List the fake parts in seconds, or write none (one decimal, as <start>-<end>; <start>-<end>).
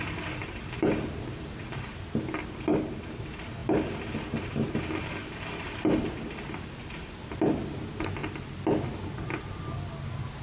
none